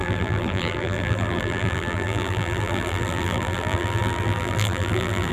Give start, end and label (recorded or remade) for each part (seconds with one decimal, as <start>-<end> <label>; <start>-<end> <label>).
0.0-5.3 remade